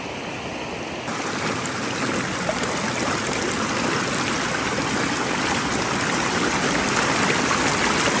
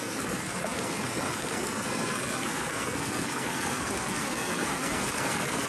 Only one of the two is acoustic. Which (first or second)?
first